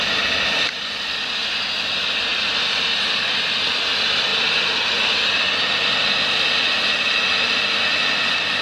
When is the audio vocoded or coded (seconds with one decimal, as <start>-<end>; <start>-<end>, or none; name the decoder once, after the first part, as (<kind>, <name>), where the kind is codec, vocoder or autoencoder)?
2.3-2.9 (vocoder, BigVGAN v2)